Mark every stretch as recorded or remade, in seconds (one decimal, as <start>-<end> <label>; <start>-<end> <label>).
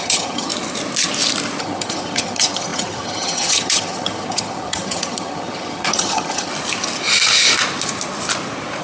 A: 0.0-0.5 remade; 0.5-1.6 recorded; 1.6-6.5 remade; 6.5-8.8 recorded